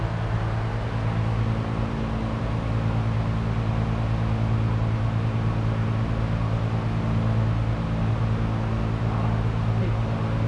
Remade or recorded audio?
recorded